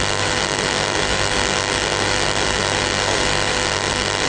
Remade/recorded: remade